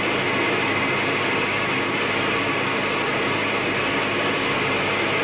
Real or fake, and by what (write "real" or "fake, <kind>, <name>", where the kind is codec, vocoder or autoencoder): real